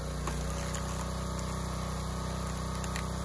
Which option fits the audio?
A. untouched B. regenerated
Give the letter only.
A